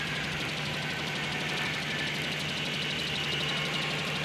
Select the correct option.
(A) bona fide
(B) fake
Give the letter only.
A